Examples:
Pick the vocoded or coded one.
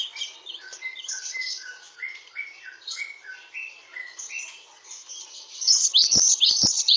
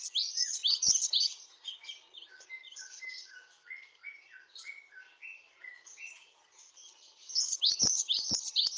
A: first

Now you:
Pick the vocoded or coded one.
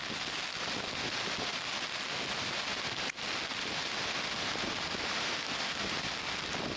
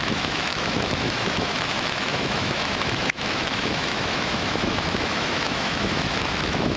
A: second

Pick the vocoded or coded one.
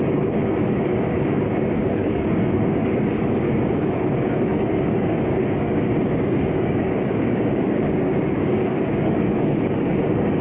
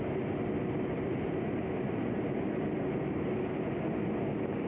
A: first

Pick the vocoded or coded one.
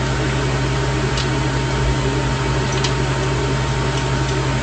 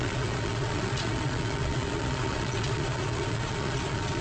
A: second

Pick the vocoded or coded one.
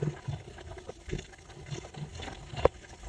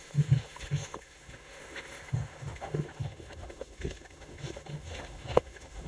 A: second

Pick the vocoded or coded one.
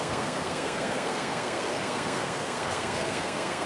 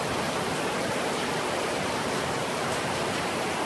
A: first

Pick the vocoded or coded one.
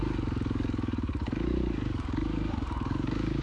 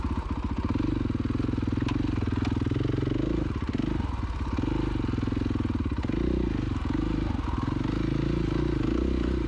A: first